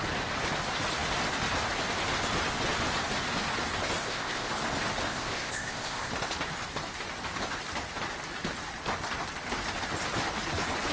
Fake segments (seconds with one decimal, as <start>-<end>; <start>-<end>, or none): 4.0-4.5; 5.1-6.1